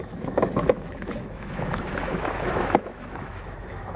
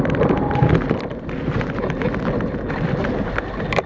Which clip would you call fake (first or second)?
first